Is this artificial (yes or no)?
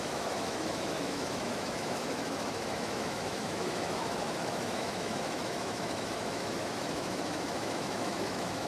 yes